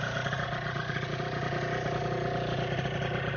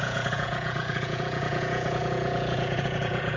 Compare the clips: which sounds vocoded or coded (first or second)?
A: second